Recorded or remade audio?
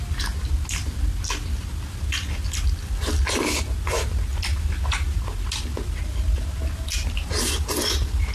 recorded